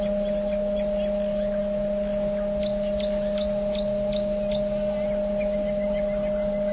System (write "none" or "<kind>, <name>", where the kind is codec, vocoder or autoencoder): none